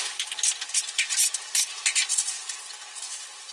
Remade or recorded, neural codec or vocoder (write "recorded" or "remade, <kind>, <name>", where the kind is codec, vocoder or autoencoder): recorded